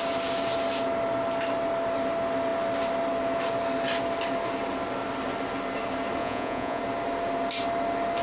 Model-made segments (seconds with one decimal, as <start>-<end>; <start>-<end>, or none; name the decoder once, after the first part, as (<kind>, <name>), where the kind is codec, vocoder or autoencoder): 6.2-6.8 (vocoder, Vocos)